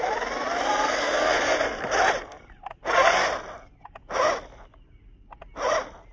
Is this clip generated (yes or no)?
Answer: no